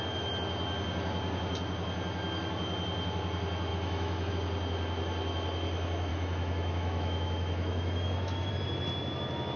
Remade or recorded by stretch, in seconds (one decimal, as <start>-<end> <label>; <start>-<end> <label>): 0.0-3.7 recorded; 3.7-4.3 remade; 4.3-6.1 recorded; 6.1-8.5 remade; 8.5-9.6 recorded